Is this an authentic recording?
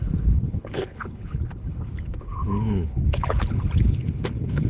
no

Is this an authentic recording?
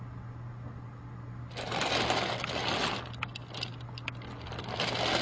yes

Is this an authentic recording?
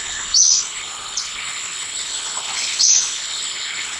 no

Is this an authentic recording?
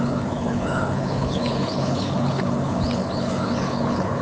no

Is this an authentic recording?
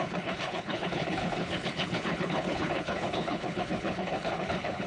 no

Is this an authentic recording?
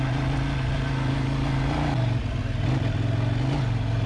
yes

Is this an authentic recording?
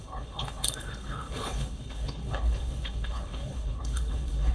no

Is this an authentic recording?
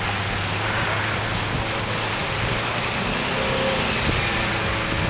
yes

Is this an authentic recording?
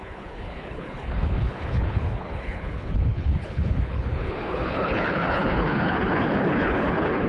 no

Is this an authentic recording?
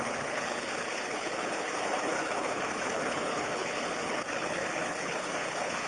no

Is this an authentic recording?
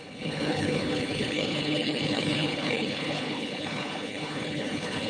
no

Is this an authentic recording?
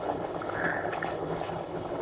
no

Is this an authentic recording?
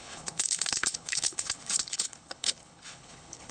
no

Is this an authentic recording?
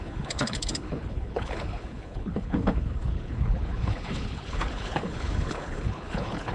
no